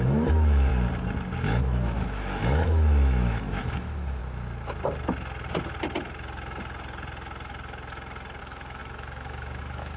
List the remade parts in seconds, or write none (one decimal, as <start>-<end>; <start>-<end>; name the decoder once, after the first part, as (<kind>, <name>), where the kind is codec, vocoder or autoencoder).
0.0-0.7 (autoencoder, DAC-VAE); 1.4-4.2; 8.4-10.0